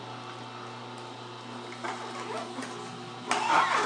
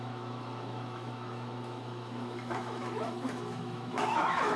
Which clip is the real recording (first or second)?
first